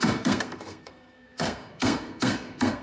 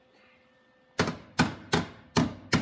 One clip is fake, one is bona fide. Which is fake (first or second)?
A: first